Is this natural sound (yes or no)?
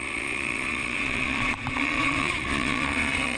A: no